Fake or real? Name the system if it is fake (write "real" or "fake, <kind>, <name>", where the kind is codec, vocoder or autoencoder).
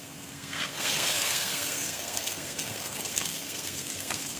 fake, codec, SNAC